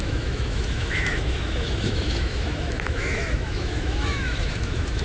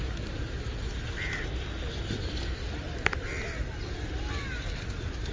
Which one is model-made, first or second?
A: first